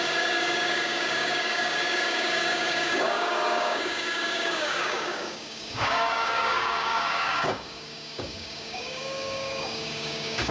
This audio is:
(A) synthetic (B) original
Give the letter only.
A